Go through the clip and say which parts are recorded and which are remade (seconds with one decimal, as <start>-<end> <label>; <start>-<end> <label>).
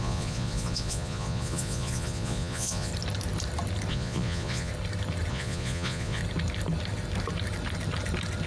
0.0-2.9 remade; 2.9-3.9 recorded; 3.9-4.7 remade; 4.7-5.3 recorded; 5.3-6.2 remade; 6.2-8.5 recorded